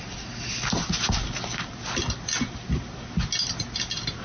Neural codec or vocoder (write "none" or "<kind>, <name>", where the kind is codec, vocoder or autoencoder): none